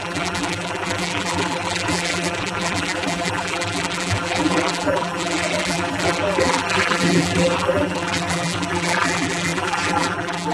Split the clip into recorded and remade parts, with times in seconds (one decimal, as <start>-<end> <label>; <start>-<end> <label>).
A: 0.0-10.5 remade